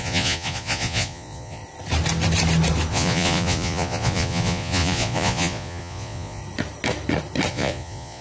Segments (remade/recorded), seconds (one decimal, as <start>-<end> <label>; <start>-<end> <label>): 0.0-1.6 remade; 1.6-2.9 recorded; 2.9-6.4 remade; 6.4-7.5 recorded; 7.5-8.2 remade